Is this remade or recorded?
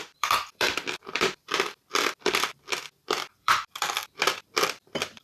remade